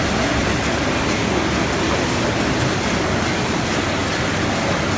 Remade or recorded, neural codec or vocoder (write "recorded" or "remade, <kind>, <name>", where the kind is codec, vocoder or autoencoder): recorded